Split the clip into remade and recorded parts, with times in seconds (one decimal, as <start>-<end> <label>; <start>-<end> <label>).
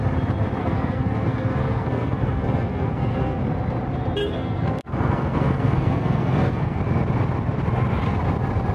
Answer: 0.0-0.6 recorded; 0.6-3.4 remade; 3.4-4.2 recorded; 4.2-6.8 remade; 6.8-8.7 recorded